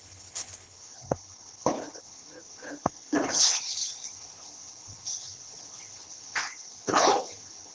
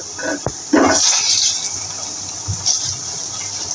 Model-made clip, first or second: first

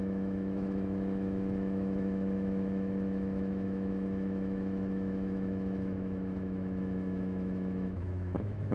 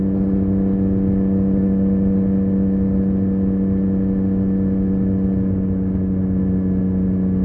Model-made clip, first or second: first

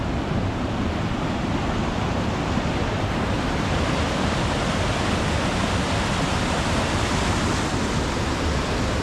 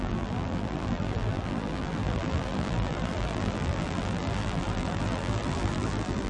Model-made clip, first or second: second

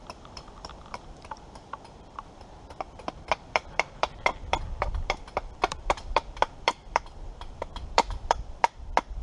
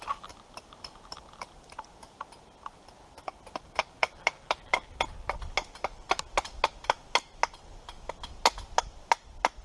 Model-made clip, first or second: first